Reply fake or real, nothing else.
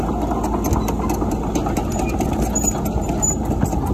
real